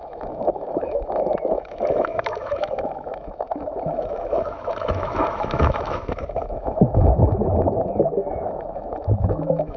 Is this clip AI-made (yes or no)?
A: yes